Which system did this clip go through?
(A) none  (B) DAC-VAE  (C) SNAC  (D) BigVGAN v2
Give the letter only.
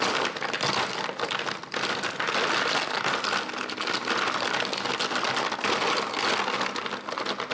A